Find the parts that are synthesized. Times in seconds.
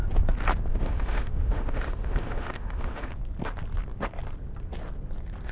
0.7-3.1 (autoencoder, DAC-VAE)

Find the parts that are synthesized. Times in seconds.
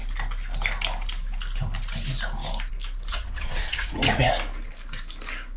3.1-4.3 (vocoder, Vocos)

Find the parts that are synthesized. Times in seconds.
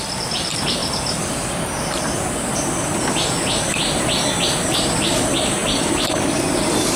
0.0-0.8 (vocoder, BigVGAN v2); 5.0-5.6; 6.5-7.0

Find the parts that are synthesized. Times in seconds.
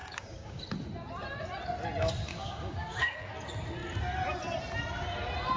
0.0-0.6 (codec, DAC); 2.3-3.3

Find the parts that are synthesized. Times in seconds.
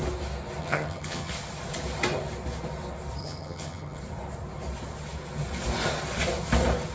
0.6-1.3 (vocoder, HiFi-GAN); 3.2-4.0